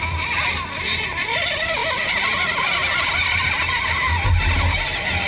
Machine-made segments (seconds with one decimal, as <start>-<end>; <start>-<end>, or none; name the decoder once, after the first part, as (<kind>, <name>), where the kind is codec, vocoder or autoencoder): none